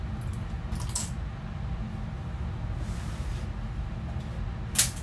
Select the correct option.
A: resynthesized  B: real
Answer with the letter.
B